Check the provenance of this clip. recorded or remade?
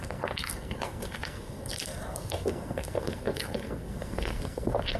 remade